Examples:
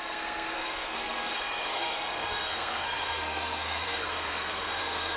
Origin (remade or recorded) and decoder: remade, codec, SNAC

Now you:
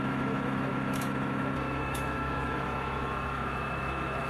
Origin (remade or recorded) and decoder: remade, autoencoder, DAC-VAE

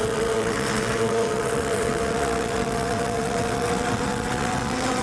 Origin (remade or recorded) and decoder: remade, vocoder, WaveNeXt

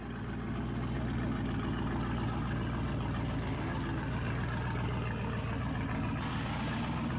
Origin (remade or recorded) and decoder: recorded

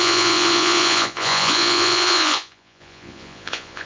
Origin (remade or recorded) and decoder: remade, vocoder, Vocos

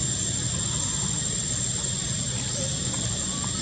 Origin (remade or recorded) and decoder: recorded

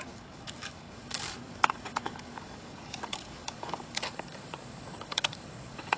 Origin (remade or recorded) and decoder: remade, codec, DAC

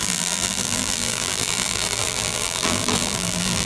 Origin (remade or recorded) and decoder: remade, vocoder, BigVGAN v2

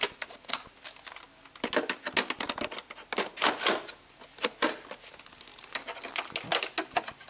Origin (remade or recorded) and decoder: recorded